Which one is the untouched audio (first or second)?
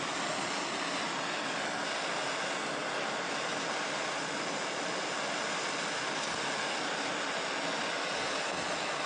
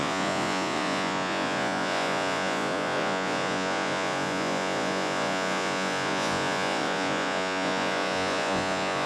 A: first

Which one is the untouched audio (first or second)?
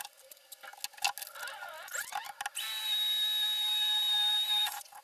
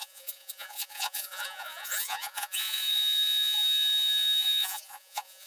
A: first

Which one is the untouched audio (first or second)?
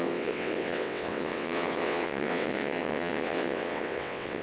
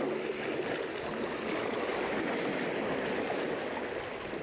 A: second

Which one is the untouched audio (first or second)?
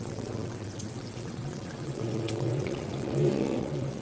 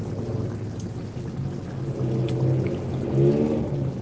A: second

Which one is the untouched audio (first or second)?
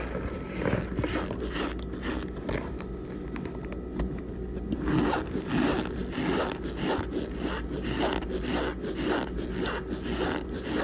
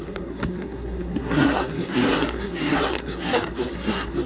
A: first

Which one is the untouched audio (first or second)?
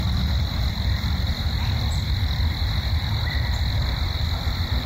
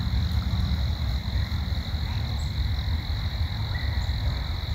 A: second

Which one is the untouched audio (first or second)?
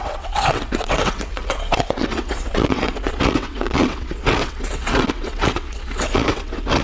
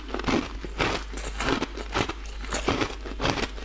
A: second